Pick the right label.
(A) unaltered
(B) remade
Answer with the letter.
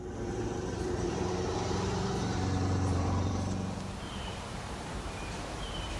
B